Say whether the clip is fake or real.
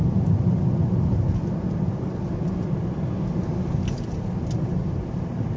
real